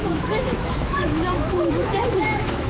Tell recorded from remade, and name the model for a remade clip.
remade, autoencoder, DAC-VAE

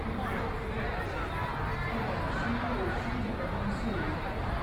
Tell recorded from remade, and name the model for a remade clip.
recorded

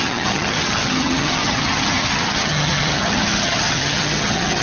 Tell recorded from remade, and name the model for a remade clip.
remade, vocoder, HiFi-GAN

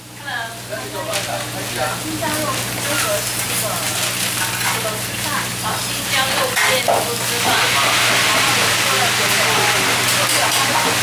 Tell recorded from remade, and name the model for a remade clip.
recorded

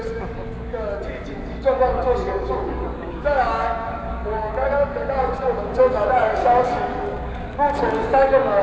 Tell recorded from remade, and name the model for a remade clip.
remade, codec, DAC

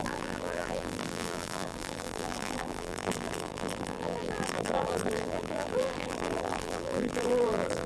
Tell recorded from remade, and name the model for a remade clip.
remade, vocoder, BigVGAN v2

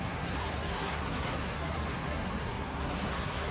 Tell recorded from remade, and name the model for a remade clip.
remade, codec, SNAC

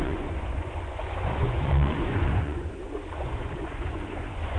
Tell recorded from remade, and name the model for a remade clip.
remade, vocoder, Vocos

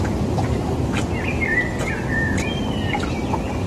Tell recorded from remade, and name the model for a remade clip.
recorded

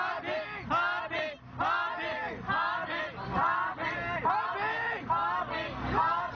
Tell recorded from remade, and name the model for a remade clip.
recorded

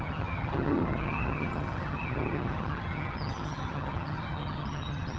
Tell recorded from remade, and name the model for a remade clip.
remade, vocoder, HiFi-GAN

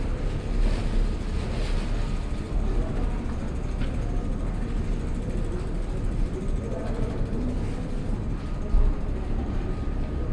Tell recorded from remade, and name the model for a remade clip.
recorded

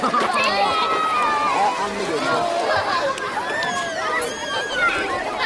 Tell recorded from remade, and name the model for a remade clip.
recorded